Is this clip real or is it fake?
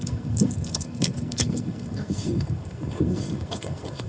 fake